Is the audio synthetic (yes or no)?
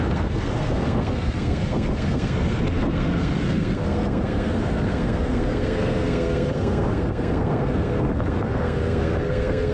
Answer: yes